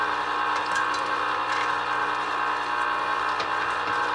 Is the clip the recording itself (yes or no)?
yes